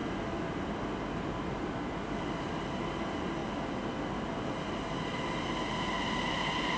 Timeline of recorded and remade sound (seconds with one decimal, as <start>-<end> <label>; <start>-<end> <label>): 0.0-3.4 remade; 3.4-6.3 recorded; 6.3-6.8 remade